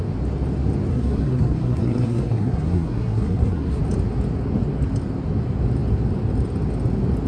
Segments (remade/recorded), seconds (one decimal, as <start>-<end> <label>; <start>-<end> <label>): 0.0-0.9 recorded; 0.9-3.8 remade; 3.8-7.3 recorded